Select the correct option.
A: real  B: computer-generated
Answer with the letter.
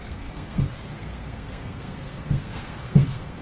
B